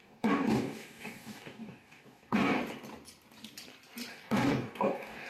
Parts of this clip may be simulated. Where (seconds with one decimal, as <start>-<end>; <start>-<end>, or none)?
0.0-2.6; 4.1-5.3